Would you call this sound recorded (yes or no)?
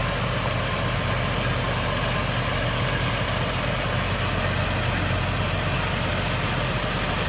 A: yes